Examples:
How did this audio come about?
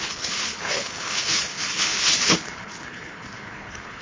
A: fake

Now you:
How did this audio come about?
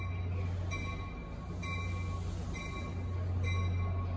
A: real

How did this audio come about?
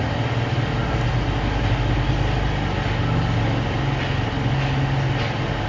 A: real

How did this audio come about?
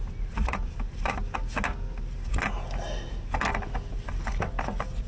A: real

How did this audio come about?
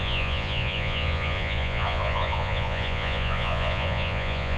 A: fake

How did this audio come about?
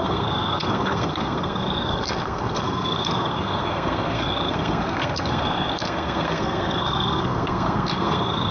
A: fake